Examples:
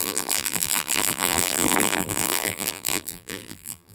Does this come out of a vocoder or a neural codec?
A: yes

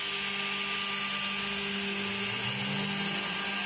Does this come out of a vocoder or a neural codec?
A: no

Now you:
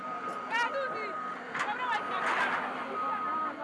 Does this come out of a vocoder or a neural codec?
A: no